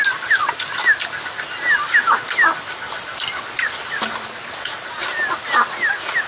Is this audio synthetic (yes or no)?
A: no